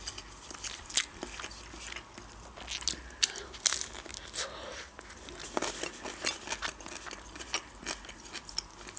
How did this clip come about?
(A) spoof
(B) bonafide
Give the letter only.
B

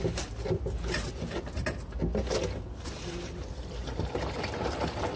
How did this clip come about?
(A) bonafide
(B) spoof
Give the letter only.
A